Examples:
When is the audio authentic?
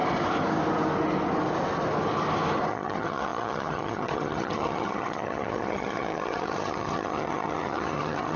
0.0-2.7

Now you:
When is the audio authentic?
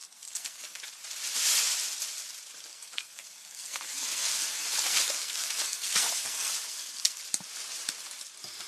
0.8-2.7; 7.2-8.7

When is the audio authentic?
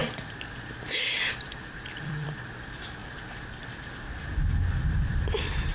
0.0-1.8; 3.0-5.1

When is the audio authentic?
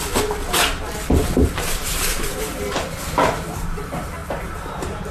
0.0-1.4; 3.8-4.2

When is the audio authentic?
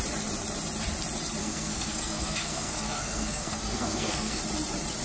0.0-1.4; 4.4-5.0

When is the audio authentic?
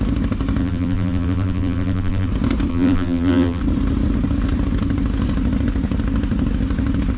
0.0-0.6; 2.3-2.7; 3.6-7.2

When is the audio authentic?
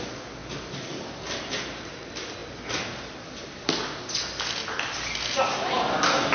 0.0-6.3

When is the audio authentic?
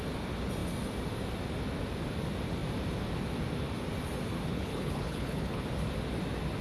0.0-4.5; 5.6-6.6